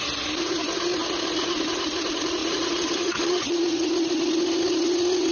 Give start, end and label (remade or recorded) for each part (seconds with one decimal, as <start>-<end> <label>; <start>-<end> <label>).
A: 0.0-2.4 recorded; 2.4-3.9 remade; 3.9-5.3 recorded